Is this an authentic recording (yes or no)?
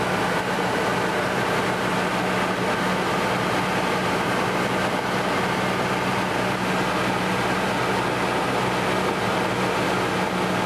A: yes